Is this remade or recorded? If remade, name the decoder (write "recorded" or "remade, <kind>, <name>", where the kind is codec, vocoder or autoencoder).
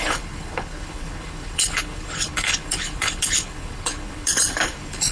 remade, codec, HILCodec